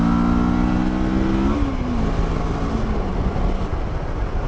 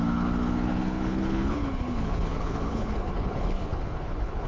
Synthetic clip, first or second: second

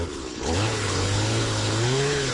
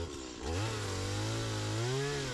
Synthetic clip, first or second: first